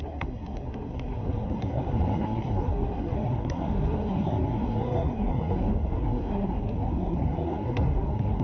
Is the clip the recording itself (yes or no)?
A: no